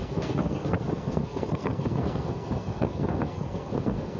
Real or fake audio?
fake